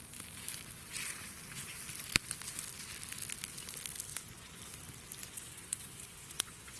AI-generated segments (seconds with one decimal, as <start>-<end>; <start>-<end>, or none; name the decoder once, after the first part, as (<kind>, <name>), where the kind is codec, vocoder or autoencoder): 4.1-4.6 (vocoder, Vocos); 5.2-6.8